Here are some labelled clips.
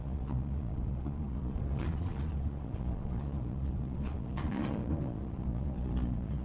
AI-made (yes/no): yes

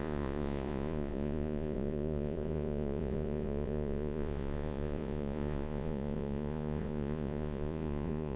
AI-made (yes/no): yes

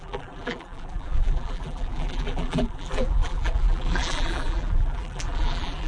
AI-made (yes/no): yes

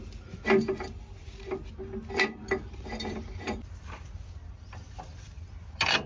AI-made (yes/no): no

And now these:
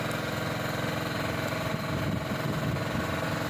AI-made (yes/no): no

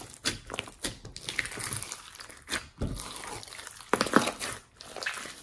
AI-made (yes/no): no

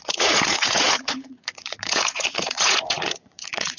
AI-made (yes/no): yes